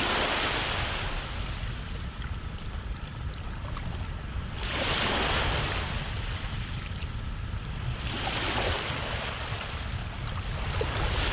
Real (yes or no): yes